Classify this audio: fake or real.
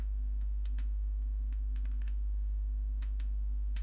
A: fake